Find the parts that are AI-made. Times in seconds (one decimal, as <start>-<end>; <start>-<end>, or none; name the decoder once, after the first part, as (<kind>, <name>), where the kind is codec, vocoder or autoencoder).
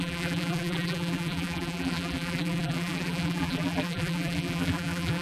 0.0-5.2 (vocoder, BigVGAN v2)